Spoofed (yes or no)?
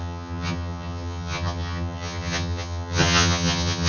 yes